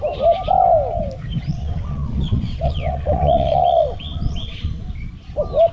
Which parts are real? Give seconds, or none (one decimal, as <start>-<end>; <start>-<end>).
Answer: 0.0-1.5; 4.9-5.7